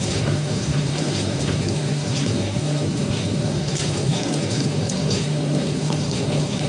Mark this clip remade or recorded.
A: remade